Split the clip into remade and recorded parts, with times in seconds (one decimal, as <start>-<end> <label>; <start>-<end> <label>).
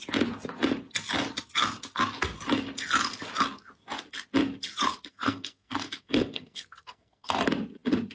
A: 0.0-5.1 recorded; 5.1-7.4 remade; 7.4-8.1 recorded